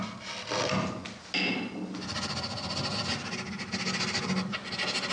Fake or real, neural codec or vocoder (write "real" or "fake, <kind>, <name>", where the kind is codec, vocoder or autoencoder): real